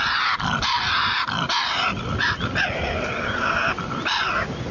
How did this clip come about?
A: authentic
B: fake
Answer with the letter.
A